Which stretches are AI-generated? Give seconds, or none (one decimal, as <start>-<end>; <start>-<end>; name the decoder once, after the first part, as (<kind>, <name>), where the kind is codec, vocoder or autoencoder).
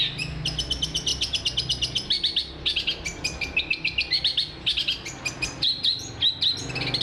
none